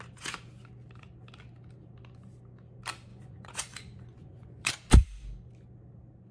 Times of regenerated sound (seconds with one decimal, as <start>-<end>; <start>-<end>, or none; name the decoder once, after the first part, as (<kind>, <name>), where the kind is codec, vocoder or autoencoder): 3.1-4.7 (vocoder, Vocos)